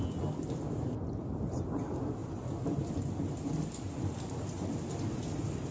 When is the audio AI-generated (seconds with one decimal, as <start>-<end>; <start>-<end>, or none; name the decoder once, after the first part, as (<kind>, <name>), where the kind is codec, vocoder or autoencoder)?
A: none